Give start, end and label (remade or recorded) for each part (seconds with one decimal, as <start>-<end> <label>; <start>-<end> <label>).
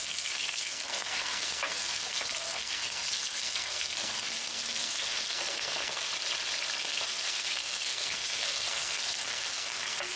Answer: 0.0-6.1 remade; 6.1-6.8 recorded; 6.8-10.2 remade